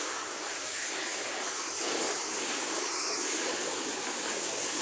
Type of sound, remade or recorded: remade